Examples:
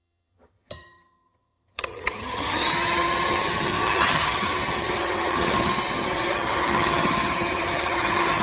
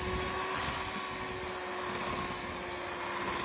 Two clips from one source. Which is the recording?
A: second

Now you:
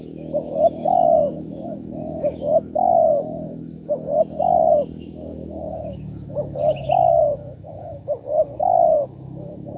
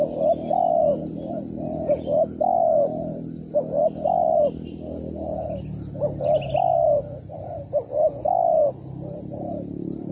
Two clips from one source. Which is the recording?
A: second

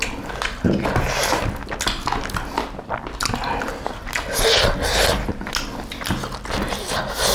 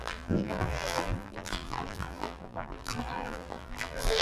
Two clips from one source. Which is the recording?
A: first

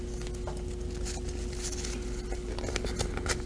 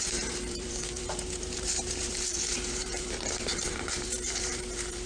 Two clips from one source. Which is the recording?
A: first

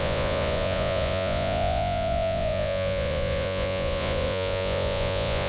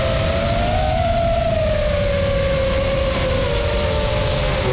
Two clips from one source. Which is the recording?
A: second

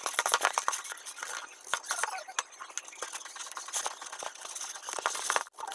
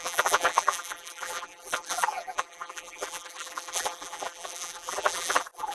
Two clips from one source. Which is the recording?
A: first